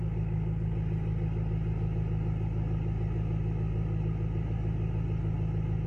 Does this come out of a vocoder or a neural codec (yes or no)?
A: no